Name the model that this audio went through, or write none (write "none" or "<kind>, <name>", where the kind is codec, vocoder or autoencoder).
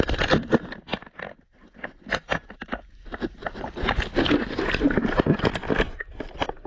none